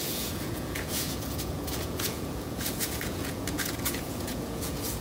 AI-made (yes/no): yes